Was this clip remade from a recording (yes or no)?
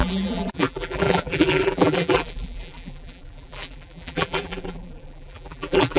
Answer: yes